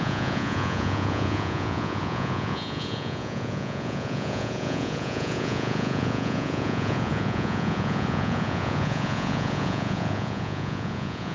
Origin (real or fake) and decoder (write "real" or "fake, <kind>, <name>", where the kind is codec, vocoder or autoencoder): fake, vocoder, Vocos